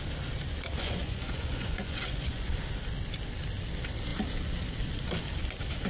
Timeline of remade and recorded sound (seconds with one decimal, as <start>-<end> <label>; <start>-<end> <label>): 0.0-0.8 recorded; 0.8-2.5 remade; 2.5-5.9 recorded